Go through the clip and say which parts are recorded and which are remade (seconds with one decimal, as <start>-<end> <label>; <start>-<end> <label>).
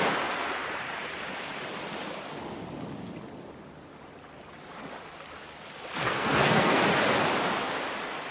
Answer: 0.0-6.0 recorded; 6.0-6.8 remade; 6.8-8.3 recorded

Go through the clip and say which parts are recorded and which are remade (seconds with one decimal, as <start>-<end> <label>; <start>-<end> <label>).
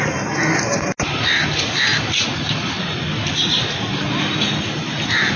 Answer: 0.0-5.4 recorded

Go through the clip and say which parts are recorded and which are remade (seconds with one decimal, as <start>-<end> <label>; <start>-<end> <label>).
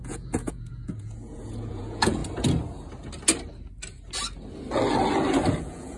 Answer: 0.0-2.2 remade; 2.2-5.6 recorded; 5.6-6.0 remade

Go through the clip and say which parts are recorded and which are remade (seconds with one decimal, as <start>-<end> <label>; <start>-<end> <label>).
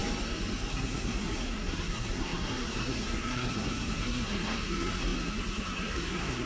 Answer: 0.0-0.7 recorded; 0.7-6.5 remade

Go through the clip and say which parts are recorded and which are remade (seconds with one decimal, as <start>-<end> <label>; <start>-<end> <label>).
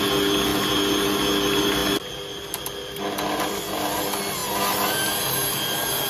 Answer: 0.0-6.1 recorded